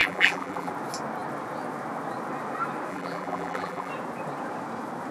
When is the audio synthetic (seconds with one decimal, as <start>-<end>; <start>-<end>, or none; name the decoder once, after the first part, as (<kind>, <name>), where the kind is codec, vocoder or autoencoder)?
0.0-0.7 (vocoder, BigVGAN v2); 2.9-3.9